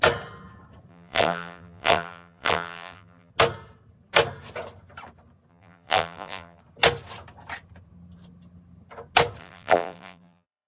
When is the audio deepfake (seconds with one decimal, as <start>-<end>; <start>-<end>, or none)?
0.9-3.3; 5.5-6.6; 9.4-10.7